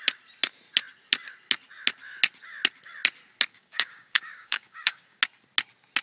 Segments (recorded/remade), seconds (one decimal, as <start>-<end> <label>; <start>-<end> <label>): 0.0-3.5 recorded; 3.5-5.2 remade; 5.2-6.0 recorded